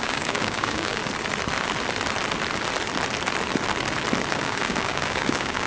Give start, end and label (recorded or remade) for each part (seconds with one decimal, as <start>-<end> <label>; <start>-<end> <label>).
0.0-1.0 remade; 1.0-4.3 recorded; 4.3-5.7 remade